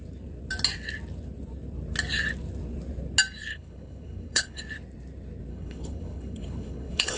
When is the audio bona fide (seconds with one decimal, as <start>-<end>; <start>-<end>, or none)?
0.0-3.5; 4.6-5.5